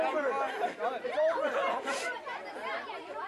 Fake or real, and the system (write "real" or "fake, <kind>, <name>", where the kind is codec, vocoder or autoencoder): real